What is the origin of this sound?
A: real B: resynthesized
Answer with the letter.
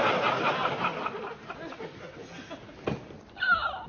A